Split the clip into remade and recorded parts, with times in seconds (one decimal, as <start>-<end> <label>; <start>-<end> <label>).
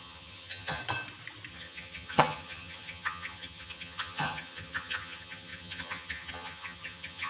0.0-0.8 remade; 0.8-1.5 recorded; 1.5-7.3 remade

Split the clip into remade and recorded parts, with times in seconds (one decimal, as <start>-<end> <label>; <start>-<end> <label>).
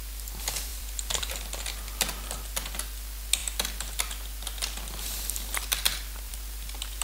0.0-0.7 recorded; 0.7-1.3 remade; 1.3-7.0 recorded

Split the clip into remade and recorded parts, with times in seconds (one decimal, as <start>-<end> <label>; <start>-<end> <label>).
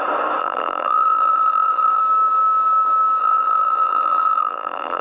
0.0-0.4 recorded; 0.4-2.0 remade; 2.0-3.2 recorded; 3.2-5.0 remade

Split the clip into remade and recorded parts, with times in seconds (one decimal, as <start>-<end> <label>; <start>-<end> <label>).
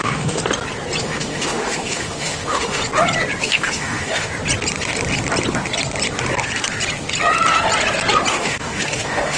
0.0-0.4 remade; 0.4-1.0 recorded; 1.0-2.8 remade; 2.8-3.4 recorded; 3.4-4.3 remade; 4.3-8.3 recorded; 8.3-9.4 remade